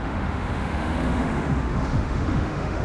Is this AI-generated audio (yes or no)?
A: yes